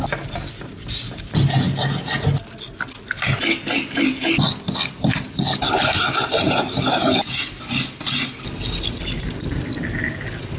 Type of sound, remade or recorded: recorded